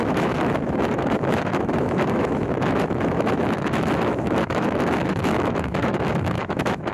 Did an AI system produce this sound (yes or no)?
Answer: yes